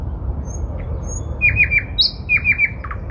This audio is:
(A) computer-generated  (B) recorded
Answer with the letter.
B